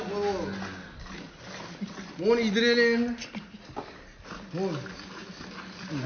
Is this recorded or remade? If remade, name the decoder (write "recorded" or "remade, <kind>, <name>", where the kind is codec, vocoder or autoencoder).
recorded